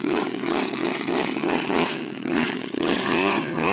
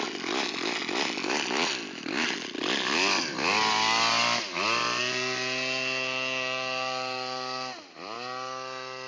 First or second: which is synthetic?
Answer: first